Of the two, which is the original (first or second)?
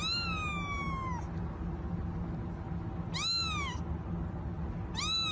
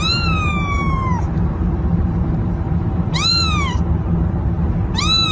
first